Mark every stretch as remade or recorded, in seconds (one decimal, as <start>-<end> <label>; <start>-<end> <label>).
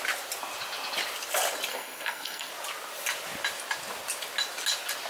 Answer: 0.0-1.7 recorded; 1.7-2.5 remade; 2.5-5.1 recorded